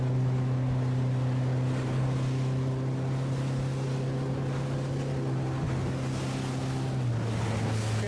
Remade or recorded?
recorded